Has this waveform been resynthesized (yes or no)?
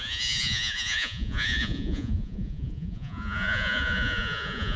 yes